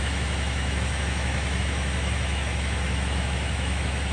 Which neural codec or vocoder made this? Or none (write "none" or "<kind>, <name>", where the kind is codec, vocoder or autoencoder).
autoencoder, DAC-VAE